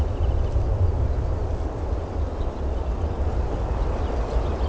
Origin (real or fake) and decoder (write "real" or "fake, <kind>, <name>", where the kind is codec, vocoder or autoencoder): real